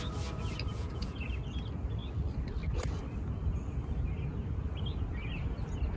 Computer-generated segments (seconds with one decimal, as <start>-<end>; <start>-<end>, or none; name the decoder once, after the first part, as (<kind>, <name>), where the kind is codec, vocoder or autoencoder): 0.7-1.3 (vocoder, Vocos)